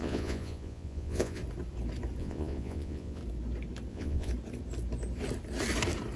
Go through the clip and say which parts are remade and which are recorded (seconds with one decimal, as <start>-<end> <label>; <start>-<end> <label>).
0.0-1.4 remade; 1.4-2.2 recorded; 2.2-3.2 remade; 3.2-3.9 recorded; 3.9-4.3 remade; 4.3-6.2 recorded